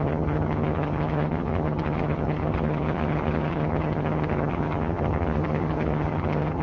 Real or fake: fake